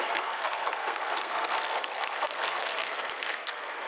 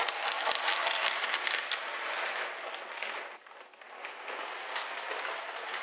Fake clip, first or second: first